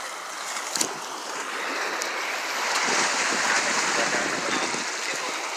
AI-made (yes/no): no